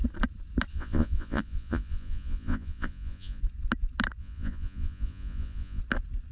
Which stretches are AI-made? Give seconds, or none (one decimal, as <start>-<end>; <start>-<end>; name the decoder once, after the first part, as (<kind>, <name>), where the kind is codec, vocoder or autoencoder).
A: 0.7-3.4 (vocoder, Vocos); 4.2-5.8